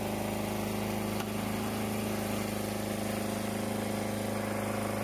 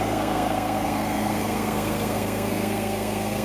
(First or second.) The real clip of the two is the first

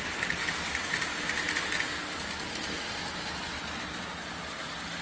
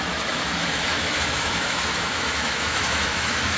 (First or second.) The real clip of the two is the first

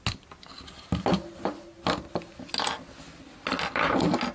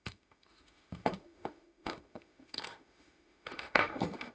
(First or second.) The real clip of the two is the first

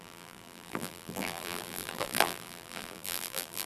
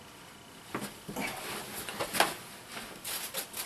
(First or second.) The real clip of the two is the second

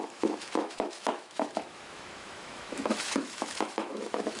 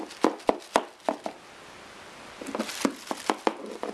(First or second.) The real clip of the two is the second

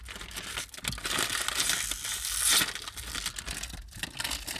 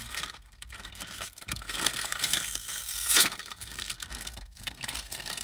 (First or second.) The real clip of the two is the first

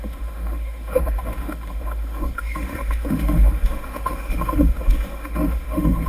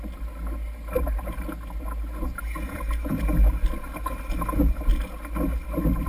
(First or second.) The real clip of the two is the second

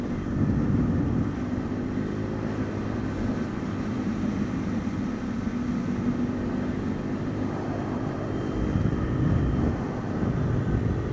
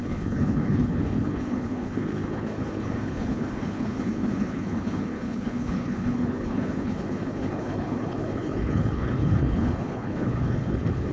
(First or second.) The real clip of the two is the first